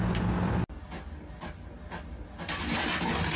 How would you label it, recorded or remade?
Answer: recorded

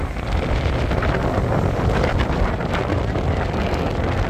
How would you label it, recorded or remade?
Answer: recorded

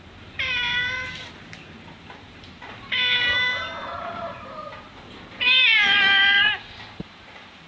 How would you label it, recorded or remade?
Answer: remade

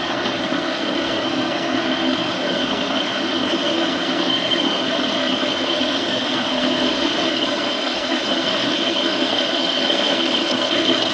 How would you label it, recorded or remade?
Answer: remade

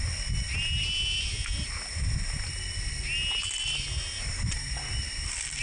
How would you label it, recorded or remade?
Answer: recorded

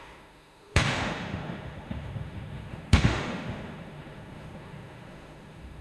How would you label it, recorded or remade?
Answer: remade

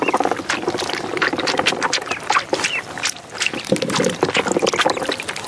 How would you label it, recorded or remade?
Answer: recorded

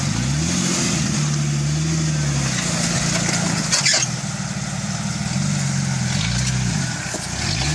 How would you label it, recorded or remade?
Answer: recorded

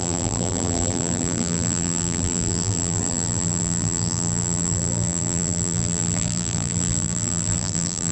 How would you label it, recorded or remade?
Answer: remade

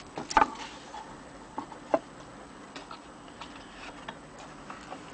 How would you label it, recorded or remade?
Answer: recorded